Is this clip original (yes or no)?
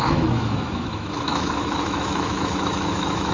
no